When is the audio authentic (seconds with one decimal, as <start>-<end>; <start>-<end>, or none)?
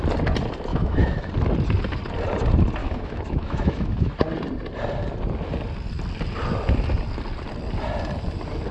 0.0-0.7; 1.3-2.8; 4.1-8.7